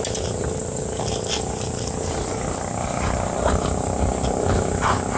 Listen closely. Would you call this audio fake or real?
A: real